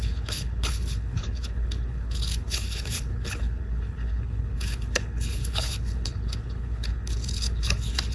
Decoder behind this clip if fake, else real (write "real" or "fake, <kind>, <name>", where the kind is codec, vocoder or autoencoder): fake, codec, HILCodec